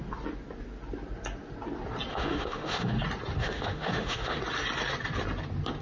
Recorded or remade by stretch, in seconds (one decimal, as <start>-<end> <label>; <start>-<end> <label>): 0.0-2.1 recorded; 2.1-3.0 remade; 3.0-3.4 recorded; 3.4-4.4 remade; 4.4-5.8 recorded